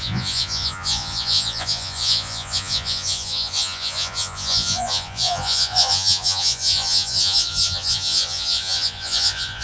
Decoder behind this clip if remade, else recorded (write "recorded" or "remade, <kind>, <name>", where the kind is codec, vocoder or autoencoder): remade, vocoder, Vocos